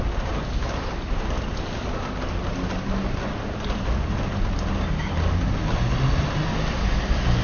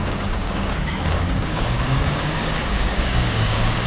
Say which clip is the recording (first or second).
first